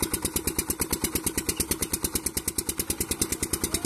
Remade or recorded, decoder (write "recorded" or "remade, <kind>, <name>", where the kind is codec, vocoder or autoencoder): recorded